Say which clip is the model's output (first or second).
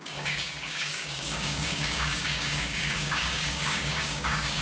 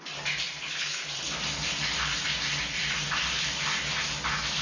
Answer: first